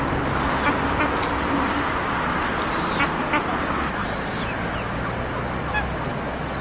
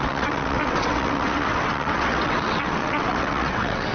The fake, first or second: second